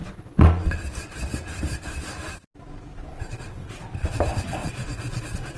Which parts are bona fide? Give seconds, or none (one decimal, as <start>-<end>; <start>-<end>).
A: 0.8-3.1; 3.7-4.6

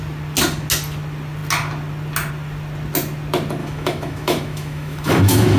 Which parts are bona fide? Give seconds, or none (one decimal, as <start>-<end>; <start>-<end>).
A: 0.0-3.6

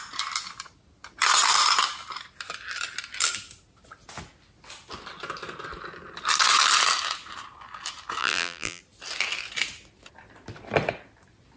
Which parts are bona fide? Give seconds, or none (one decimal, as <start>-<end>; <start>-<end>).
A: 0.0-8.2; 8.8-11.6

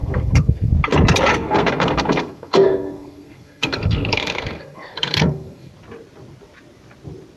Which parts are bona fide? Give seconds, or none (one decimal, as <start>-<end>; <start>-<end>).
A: 0.7-1.3; 5.7-7.4